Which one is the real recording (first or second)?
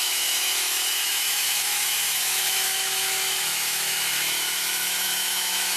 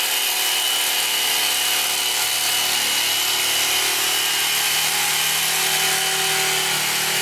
second